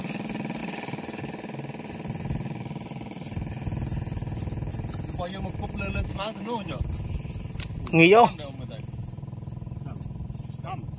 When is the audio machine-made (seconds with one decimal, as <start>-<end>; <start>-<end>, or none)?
6.1-6.8